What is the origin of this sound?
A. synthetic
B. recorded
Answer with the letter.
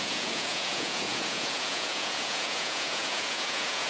A